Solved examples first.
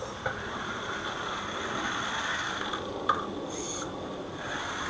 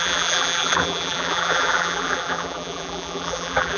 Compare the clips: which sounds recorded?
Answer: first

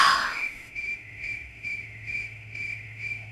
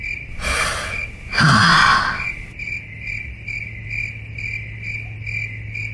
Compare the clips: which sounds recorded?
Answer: second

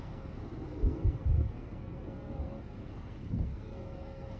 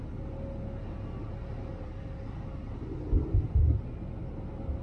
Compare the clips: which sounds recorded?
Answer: second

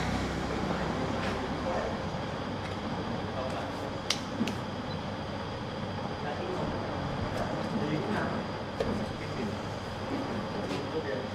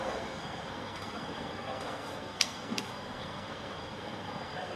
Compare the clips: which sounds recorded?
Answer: first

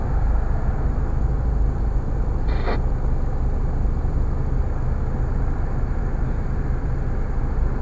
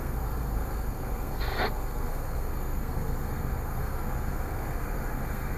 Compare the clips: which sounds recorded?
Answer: first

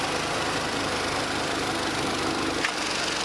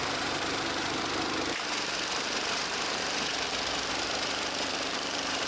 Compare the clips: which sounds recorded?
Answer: first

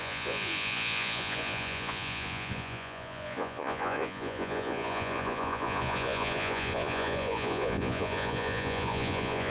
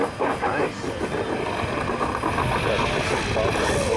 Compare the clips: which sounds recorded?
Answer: second